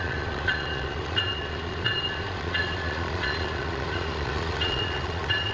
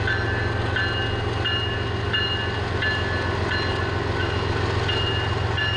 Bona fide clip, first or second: second